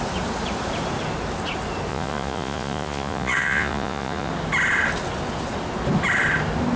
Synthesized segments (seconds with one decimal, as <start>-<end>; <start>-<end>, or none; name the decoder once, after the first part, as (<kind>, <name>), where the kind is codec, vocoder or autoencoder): 1.9-4.3 (vocoder, Vocos)